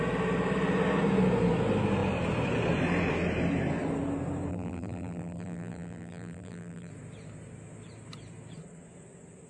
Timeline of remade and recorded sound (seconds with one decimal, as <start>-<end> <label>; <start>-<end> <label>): 0.0-4.5 recorded; 4.5-6.9 remade; 6.9-9.5 recorded